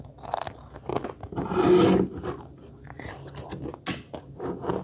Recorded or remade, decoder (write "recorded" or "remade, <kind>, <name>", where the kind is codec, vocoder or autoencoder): recorded